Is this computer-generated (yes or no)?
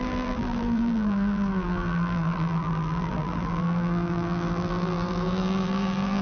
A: yes